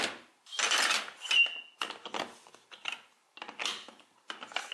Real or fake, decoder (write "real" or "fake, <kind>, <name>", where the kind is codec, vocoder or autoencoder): real